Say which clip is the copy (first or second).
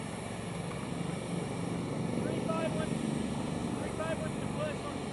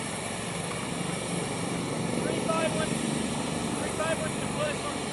second